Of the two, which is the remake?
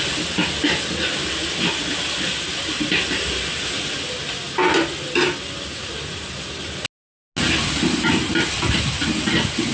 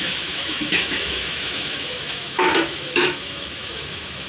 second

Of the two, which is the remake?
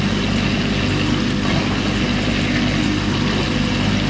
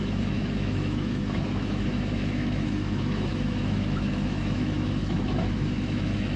second